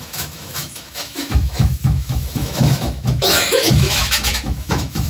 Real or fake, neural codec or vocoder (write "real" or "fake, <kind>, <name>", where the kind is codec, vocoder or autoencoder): fake, autoencoder, DAC-VAE